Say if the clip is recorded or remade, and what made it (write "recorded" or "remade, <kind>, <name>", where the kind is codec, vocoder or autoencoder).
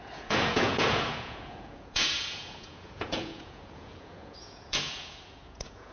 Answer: remade, vocoder, Vocos